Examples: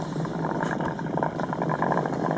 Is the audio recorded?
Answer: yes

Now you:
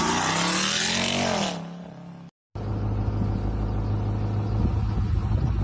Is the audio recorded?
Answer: yes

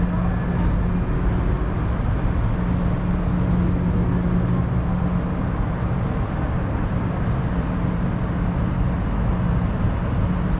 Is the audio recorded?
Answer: yes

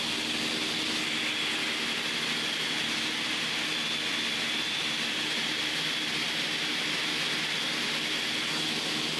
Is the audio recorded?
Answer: yes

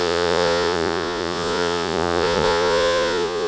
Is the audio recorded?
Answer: no